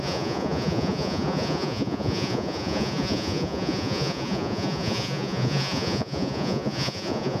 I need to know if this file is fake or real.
fake